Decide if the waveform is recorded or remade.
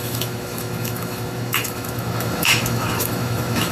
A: remade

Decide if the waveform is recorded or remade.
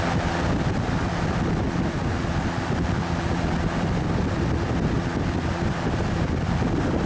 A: recorded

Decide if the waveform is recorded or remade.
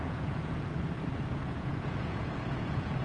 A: remade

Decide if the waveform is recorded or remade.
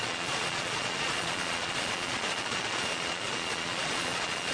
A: remade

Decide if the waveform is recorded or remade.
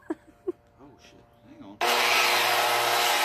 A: recorded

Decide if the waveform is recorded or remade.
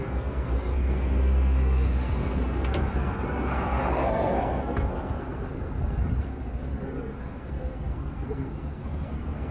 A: remade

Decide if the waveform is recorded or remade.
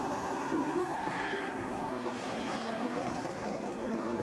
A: remade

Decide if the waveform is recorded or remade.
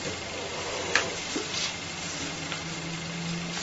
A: recorded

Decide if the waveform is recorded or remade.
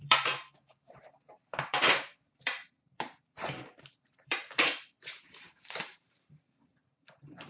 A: remade